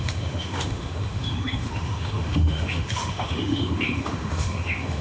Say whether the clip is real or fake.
fake